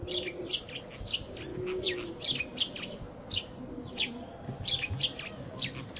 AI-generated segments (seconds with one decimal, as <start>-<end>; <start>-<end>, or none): 1.5-2.1